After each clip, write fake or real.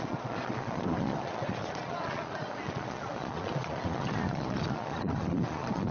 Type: fake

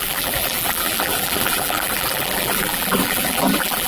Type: fake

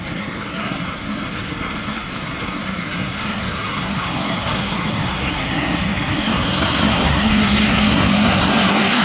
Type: fake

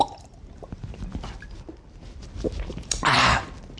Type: real